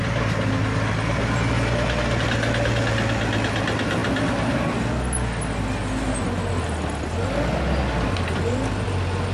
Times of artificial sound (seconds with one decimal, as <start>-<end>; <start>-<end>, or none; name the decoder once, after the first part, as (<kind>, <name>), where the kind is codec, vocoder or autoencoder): none